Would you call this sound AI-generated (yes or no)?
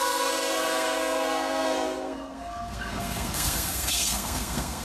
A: yes